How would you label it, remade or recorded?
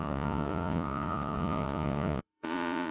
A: remade